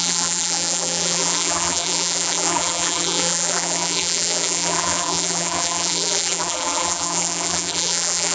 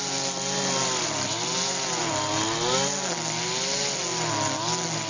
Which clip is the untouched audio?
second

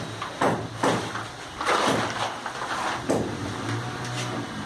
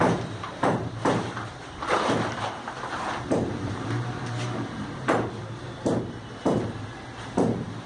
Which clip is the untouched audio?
first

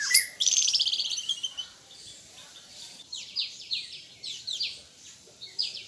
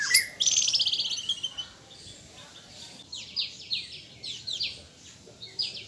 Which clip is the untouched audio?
second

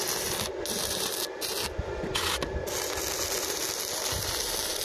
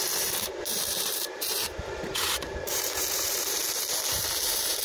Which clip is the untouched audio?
first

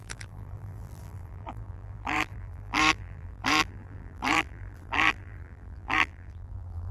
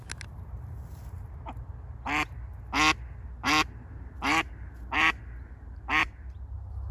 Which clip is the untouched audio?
second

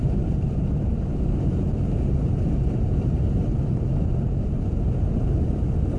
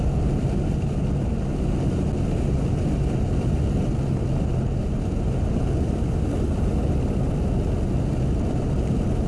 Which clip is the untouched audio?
second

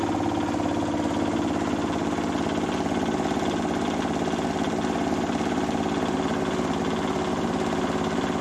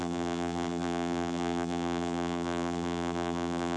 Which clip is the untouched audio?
first